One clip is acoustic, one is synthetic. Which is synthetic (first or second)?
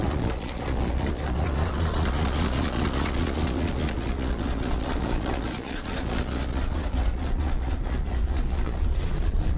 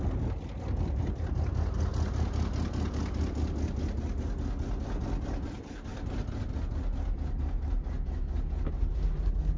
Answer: first